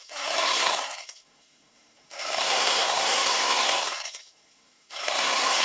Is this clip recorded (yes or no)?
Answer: no